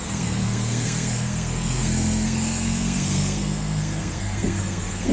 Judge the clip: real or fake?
fake